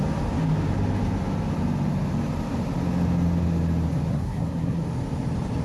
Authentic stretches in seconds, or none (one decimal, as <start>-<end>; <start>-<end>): 0.0-4.1; 4.8-5.6